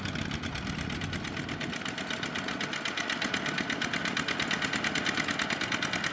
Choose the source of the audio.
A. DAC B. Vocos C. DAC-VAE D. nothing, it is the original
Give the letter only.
D